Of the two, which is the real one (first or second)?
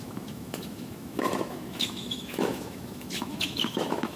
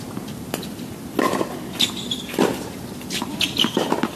second